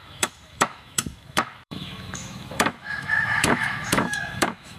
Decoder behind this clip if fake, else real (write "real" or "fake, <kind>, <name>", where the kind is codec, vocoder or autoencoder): fake, autoencoder, DAC-VAE